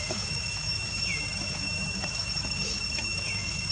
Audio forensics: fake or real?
fake